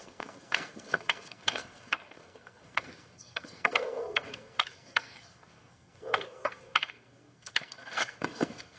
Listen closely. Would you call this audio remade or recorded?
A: remade